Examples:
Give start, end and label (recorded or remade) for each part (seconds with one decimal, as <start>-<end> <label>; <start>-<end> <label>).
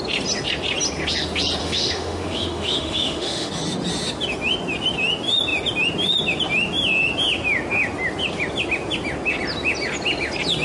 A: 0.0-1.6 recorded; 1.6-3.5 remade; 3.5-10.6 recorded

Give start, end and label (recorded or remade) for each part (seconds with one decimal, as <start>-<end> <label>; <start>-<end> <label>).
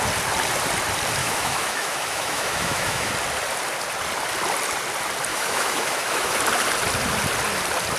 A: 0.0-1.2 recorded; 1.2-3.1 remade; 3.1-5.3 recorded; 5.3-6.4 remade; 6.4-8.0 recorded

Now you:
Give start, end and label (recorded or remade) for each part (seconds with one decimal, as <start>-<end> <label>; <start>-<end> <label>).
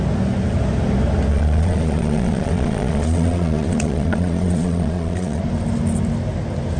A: 0.0-1.3 recorded; 1.3-5.4 remade; 5.4-6.8 recorded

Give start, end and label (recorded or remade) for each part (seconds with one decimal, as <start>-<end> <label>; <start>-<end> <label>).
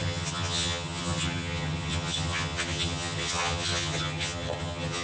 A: 0.0-5.0 remade